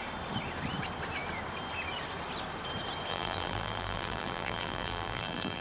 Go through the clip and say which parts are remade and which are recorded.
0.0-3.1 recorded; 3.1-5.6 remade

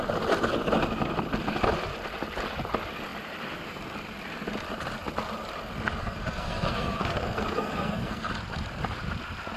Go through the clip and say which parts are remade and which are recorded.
0.0-6.0 recorded; 6.0-8.3 remade; 8.3-9.6 recorded

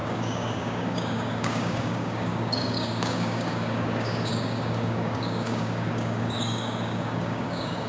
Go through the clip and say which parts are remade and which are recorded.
0.0-7.9 remade

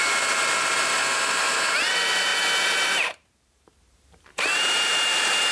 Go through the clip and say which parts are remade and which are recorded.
0.0-1.0 remade; 1.0-1.9 recorded; 1.9-5.5 remade

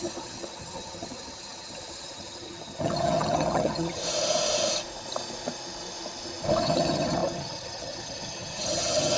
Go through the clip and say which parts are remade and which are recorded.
0.0-4.0 remade; 4.0-6.6 recorded; 6.6-9.2 remade

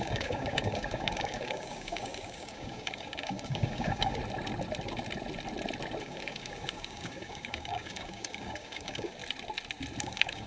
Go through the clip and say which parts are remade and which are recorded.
0.0-4.2 remade; 4.2-6.0 recorded; 6.0-9.2 remade; 9.2-10.0 recorded; 10.0-10.5 remade

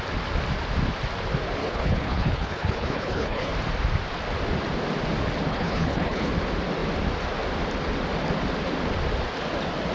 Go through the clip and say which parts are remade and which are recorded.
0.0-1.6 recorded; 1.6-3.5 remade; 3.5-5.5 recorded; 5.5-6.3 remade; 6.3-9.9 recorded

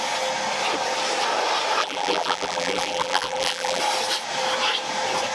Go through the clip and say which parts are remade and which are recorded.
0.0-1.8 recorded; 1.8-3.8 remade; 3.8-5.3 recorded